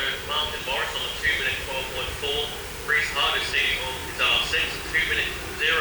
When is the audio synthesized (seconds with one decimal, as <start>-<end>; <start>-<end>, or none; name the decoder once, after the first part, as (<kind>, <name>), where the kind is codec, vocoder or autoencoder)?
none

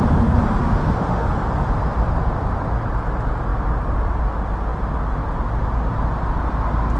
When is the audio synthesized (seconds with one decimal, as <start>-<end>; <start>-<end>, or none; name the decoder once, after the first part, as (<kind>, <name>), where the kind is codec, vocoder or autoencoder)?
0.6-1.3 (autoencoder, DAC-VAE)

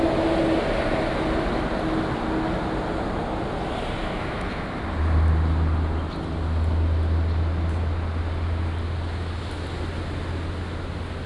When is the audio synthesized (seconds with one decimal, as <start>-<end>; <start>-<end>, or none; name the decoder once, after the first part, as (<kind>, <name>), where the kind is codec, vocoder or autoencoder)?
4.0-4.8 (autoencoder, DAC-VAE)

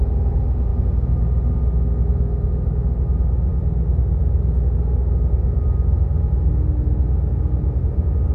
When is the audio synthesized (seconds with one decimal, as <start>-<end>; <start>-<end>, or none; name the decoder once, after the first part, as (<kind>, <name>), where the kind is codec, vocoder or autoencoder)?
none